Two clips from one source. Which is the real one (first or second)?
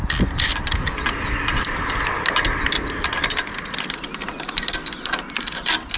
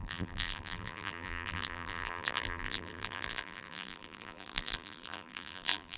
first